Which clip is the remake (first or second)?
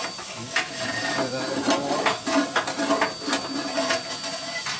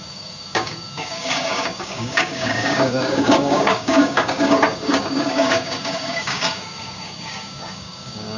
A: second